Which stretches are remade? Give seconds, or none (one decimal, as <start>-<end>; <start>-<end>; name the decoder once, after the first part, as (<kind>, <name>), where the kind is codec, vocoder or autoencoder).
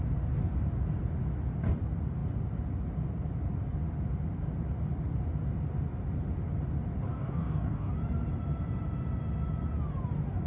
7.1-7.9 (codec, DAC)